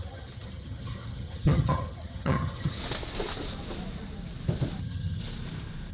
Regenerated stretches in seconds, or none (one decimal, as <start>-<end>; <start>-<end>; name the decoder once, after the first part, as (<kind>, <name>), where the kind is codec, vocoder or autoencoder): 0.0-2.8 (vocoder, HiFi-GAN); 4.8-5.2